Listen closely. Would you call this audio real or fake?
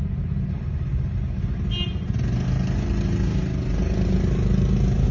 real